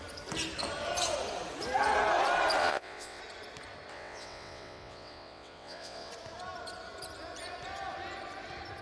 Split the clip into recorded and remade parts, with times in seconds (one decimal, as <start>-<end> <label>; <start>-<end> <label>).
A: 0.0-2.6 recorded; 2.6-3.2 remade; 3.2-3.9 recorded; 3.9-6.1 remade; 6.1-8.8 recorded